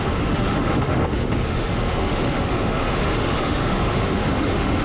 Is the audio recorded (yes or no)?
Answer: no